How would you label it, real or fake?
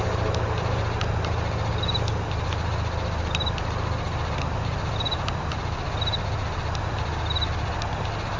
real